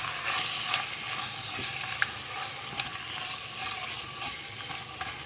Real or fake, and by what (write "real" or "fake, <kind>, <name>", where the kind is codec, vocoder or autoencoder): real